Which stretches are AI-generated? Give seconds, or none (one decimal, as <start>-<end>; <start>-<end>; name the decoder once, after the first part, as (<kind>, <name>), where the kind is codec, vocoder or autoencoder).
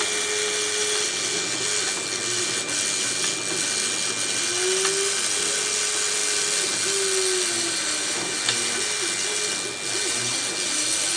none